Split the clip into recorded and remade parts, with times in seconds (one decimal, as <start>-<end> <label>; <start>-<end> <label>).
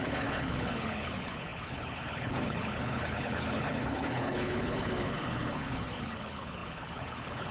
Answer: 0.0-7.5 remade